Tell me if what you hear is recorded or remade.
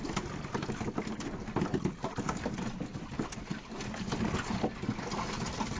recorded